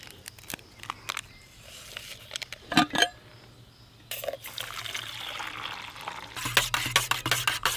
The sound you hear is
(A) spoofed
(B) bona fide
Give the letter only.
B